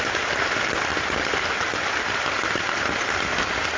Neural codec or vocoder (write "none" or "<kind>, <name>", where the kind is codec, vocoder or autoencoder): none